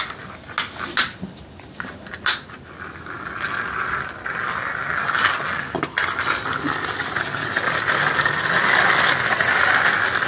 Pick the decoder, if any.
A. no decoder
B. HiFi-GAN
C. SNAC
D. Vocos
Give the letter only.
A